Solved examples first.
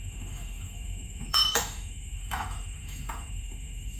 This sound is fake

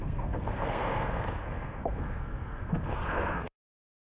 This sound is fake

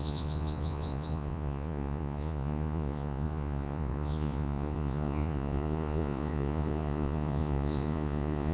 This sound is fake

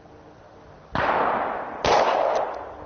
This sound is real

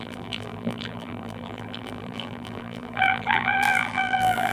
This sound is fake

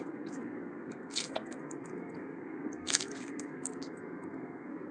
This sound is fake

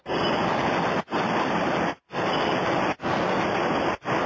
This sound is real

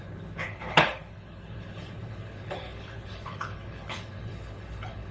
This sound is fake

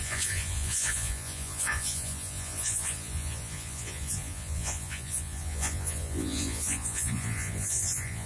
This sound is fake